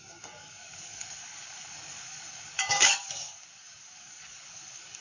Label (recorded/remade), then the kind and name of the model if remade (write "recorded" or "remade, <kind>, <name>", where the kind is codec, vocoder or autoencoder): remade, codec, DAC